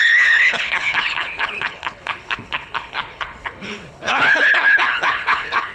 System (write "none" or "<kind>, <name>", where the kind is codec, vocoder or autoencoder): codec, HILCodec